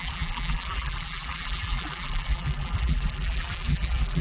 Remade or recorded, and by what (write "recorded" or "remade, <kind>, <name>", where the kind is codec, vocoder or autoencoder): remade, vocoder, BigVGAN v2